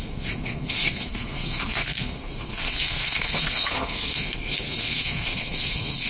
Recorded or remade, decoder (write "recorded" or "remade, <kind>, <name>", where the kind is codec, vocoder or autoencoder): remade, codec, SNAC